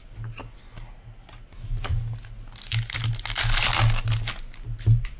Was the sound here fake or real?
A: real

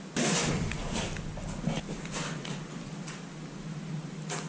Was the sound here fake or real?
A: real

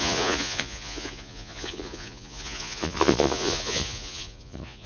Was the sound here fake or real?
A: fake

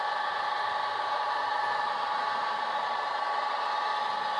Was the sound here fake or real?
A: real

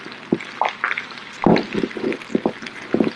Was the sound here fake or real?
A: real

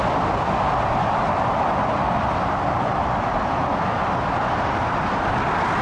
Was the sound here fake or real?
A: real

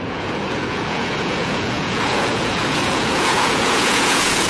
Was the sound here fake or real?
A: fake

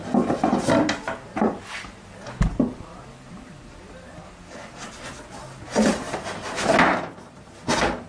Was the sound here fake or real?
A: real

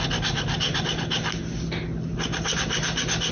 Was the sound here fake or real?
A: real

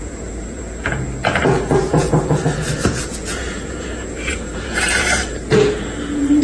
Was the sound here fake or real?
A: fake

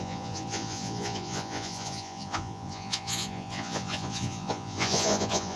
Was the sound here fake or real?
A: fake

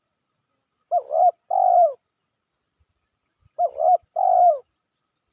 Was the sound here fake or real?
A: real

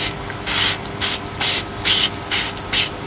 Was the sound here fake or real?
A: real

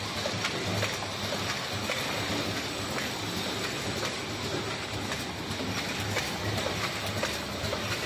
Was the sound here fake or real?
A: real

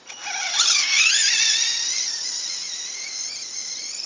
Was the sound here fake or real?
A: fake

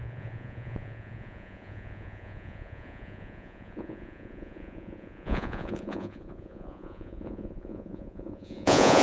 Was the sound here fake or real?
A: fake